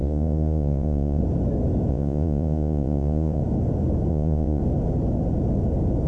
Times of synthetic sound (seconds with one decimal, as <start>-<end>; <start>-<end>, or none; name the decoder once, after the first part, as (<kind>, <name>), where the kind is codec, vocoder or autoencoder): 0.0-1.2 (vocoder, Vocos); 1.9-3.4; 4.1-4.6